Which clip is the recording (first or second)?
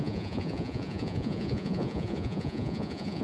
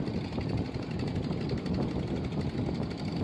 second